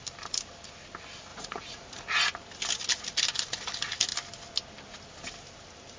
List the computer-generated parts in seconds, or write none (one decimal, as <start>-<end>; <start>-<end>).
1.3-2.0